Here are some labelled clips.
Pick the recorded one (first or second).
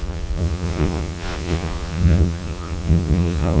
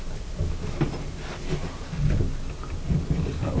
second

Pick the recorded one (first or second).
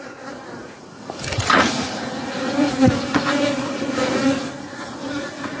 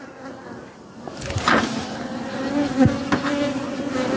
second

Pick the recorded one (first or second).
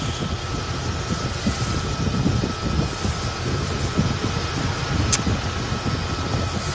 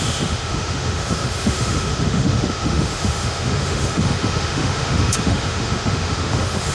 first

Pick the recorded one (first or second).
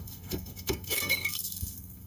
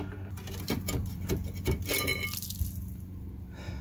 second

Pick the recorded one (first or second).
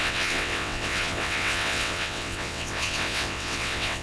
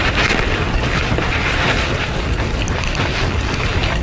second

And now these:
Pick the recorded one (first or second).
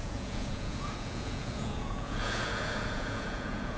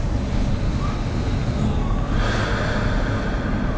second